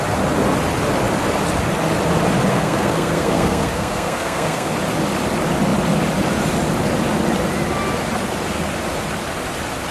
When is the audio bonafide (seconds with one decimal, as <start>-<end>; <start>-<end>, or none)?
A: 0.0-2.5; 4.7-9.9